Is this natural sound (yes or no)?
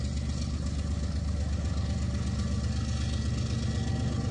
yes